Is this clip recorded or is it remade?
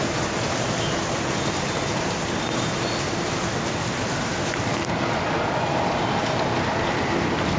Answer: recorded